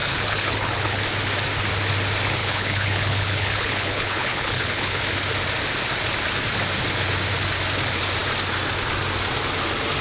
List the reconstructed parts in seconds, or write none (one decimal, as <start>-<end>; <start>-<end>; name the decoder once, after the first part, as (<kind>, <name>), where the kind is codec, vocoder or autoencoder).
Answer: 0.0-1.0 (codec, HILCodec); 2.4-5.0